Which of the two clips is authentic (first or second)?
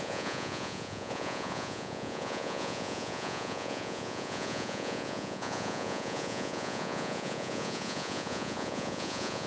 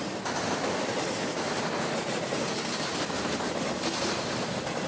second